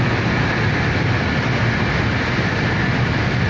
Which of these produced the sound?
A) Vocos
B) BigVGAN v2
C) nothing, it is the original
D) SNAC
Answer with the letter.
C